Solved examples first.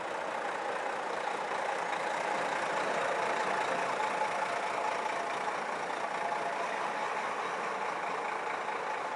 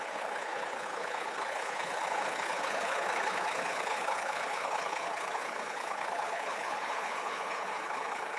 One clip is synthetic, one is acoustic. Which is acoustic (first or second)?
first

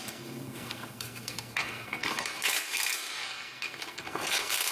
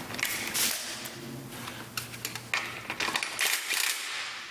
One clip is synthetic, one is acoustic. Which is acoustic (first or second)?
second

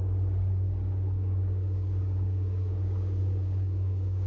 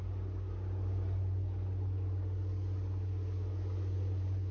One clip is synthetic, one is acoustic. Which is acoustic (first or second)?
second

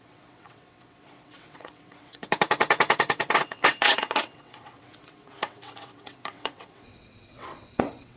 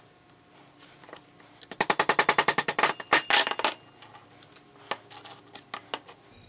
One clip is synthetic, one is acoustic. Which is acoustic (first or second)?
second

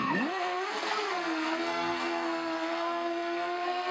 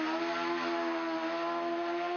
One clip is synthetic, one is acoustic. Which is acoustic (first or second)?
second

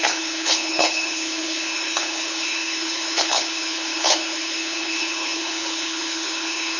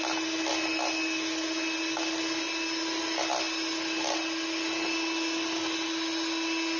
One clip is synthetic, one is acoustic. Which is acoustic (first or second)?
second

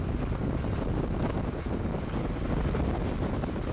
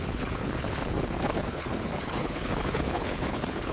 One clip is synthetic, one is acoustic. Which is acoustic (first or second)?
first